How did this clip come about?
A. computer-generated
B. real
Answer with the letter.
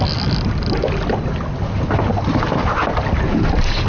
A